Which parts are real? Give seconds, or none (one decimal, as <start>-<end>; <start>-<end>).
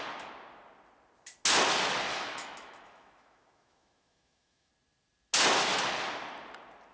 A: 0.0-2.1; 4.7-6.9